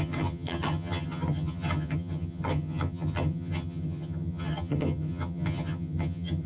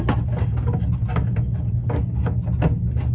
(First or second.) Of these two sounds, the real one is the second